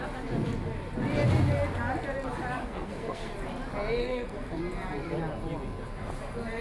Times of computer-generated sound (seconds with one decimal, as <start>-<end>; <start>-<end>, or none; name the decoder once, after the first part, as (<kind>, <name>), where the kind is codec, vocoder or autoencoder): 2.6-3.3 (codec, SNAC); 4.0-4.6

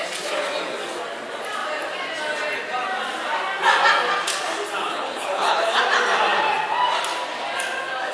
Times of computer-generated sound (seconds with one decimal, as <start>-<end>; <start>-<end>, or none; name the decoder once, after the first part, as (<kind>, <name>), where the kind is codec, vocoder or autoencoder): 4.8-5.8 (codec, HILCodec)

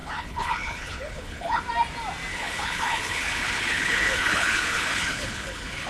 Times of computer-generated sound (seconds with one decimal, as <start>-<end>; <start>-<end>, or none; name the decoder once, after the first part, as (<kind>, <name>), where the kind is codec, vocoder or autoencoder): 0.0-1.6 (codec, HILCodec); 2.3-5.9

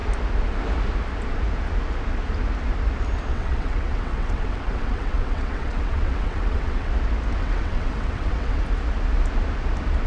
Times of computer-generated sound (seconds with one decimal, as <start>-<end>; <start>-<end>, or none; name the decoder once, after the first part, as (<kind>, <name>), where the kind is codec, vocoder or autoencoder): 3.3-6.9 (vocoder, WaveNeXt); 7.4-8.6